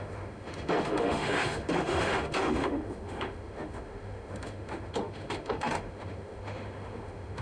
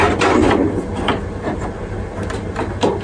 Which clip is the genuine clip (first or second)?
second